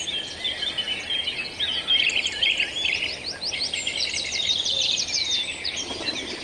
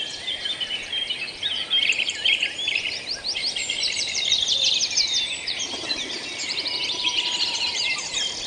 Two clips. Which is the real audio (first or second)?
first